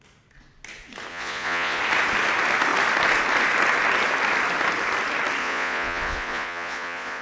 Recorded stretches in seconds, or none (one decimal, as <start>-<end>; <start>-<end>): 0.0-1.1; 1.8-5.4